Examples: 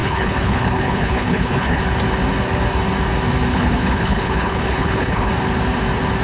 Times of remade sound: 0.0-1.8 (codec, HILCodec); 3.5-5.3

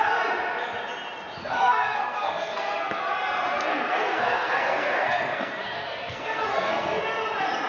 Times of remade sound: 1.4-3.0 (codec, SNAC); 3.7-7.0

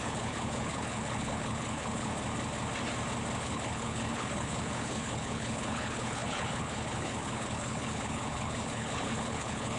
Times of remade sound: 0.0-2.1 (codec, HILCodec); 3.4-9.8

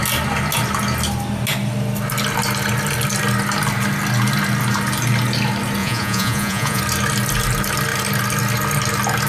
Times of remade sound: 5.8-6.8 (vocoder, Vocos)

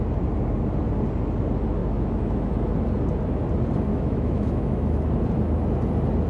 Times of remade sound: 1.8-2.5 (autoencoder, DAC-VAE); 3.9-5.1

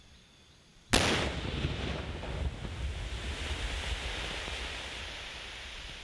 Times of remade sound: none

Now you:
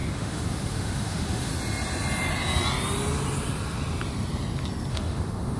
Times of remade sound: 0.0-1.5 (autoencoder, DAC-VAE); 4.9-5.6

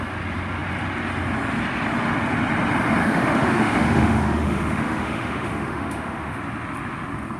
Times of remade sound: 3.0-6.4 (autoencoder, DAC-VAE)